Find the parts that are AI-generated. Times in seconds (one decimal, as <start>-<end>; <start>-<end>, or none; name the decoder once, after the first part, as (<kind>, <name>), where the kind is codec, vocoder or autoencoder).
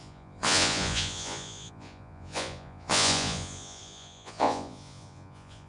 0.0-5.7 (vocoder, Vocos)